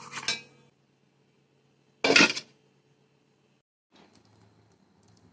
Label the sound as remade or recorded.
recorded